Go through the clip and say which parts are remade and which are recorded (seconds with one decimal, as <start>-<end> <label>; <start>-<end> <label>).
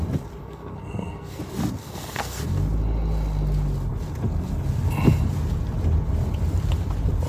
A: 0.0-0.4 recorded; 0.4-1.4 remade; 1.4-1.8 recorded; 1.8-2.4 remade; 2.4-7.3 recorded